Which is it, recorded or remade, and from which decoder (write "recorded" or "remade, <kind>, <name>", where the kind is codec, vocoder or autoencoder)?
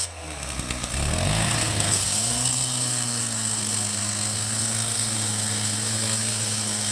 remade, codec, SNAC